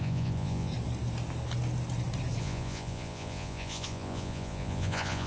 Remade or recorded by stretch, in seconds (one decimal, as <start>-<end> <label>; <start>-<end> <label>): 0.0-0.7 remade; 0.7-2.4 recorded; 2.4-5.3 remade